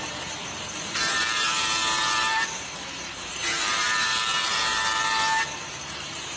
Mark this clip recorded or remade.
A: remade